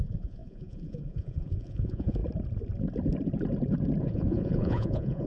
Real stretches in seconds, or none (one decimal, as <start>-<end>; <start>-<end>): 2.2-4.0